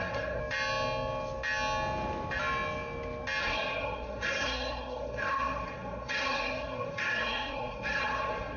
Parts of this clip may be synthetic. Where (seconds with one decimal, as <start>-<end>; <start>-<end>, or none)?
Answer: 0.0-0.4; 3.4-8.6